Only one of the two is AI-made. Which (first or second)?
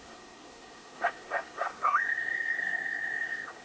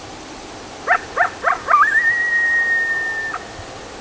first